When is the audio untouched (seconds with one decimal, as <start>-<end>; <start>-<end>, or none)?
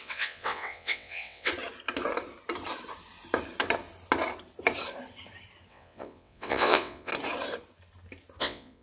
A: 1.5-5.7; 7.1-8.4